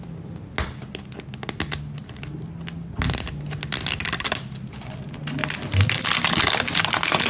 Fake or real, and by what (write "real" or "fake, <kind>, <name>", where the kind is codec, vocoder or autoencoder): real